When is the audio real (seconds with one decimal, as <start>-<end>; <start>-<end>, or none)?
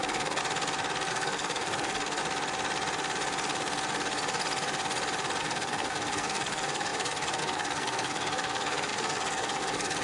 0.4-1.1; 2.2-5.4